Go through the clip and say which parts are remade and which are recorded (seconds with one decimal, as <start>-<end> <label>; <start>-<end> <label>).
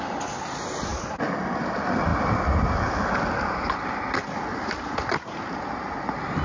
0.0-6.4 recorded